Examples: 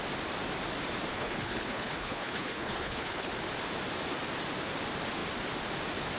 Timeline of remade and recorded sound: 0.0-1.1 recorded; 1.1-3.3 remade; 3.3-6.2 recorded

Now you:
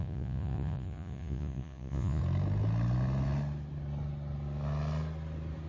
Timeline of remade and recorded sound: 0.0-2.2 remade; 2.2-5.7 recorded

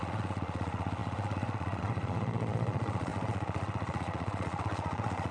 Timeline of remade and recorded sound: 0.0-5.3 remade

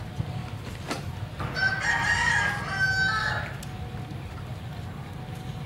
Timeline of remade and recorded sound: 0.0-0.4 remade; 0.4-3.8 recorded; 3.8-5.7 remade

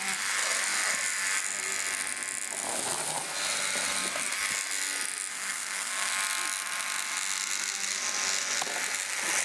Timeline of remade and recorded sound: 0.0-5.3 recorded; 5.3-6.1 remade; 6.1-9.4 recorded

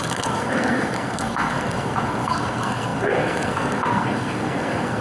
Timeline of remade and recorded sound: 0.0-5.0 remade

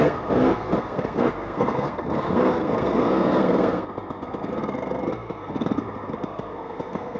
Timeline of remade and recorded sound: 0.0-7.2 remade

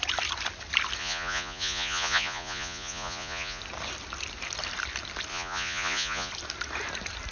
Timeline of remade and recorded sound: 0.0-1.0 recorded; 1.0-3.6 remade; 3.6-5.3 recorded; 5.3-6.3 remade; 6.3-7.3 recorded